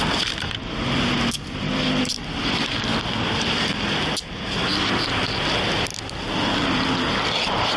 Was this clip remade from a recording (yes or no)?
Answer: no